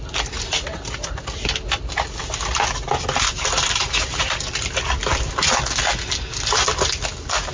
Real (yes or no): yes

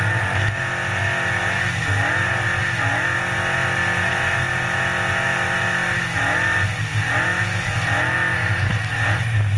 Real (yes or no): yes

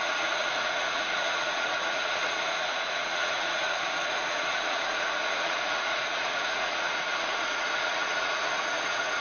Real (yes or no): no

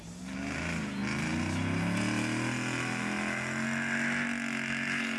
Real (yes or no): yes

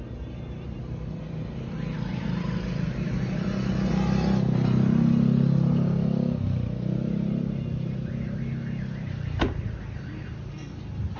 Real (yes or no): yes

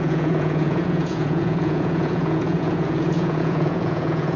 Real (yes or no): no